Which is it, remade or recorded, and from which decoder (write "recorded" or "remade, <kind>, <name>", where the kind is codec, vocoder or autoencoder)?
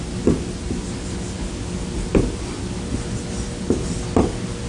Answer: recorded